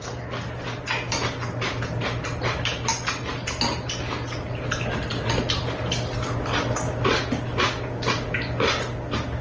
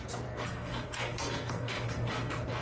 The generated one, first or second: second